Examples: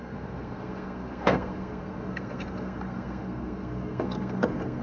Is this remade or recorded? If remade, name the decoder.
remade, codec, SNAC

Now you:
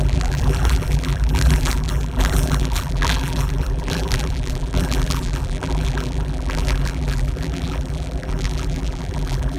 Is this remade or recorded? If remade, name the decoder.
remade, vocoder, BigVGAN v2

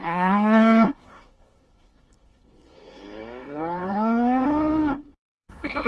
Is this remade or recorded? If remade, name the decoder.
remade, codec, SNAC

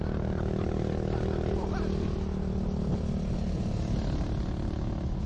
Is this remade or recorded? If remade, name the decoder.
recorded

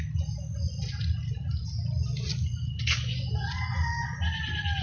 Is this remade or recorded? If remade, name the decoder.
recorded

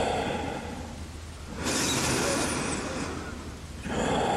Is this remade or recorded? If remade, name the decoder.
recorded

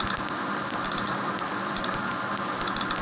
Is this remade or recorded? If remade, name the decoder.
remade, vocoder, BigVGAN v2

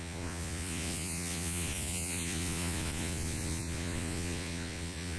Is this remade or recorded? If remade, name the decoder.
remade, vocoder, Vocos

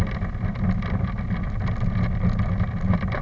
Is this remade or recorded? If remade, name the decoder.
recorded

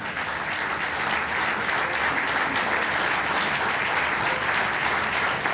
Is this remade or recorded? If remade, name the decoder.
recorded